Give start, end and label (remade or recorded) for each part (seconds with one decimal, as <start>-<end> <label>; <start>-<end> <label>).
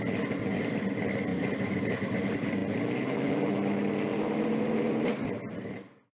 0.0-1.3 recorded; 1.3-1.8 remade; 1.8-4.1 recorded; 4.1-6.2 remade